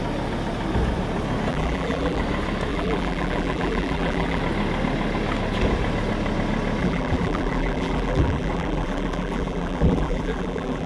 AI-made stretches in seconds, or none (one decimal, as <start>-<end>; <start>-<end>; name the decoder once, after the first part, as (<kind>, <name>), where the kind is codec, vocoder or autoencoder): 1.5-2.2 (vocoder, BigVGAN v2); 2.7-4.4; 6.8-10.9